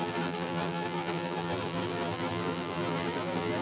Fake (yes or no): yes